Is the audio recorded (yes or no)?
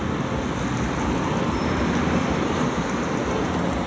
yes